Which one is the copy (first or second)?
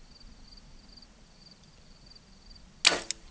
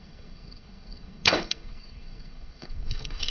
second